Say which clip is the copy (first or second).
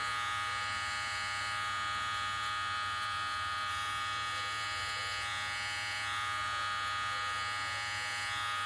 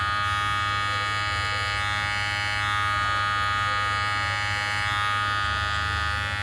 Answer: first